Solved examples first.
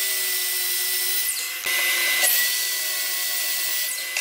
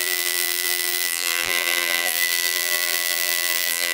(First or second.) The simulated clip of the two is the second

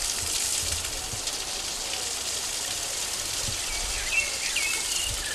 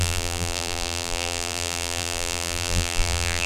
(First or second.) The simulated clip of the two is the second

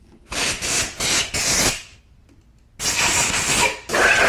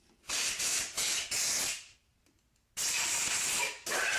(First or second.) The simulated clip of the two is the second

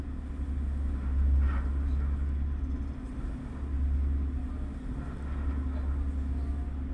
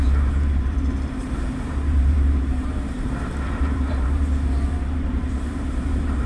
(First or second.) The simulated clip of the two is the second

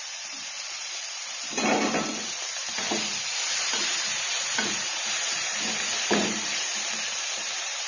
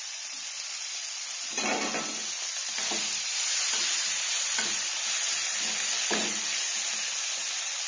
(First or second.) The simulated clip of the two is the first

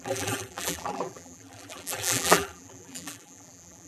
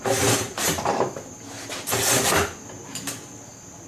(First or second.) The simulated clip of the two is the first